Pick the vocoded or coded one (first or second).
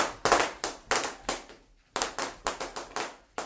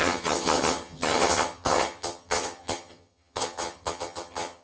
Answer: second